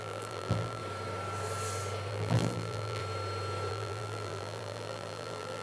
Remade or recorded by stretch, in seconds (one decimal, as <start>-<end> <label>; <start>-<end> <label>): 0.0-0.8 remade; 0.8-2.1 recorded; 2.1-3.0 remade; 3.0-3.7 recorded; 3.7-5.6 remade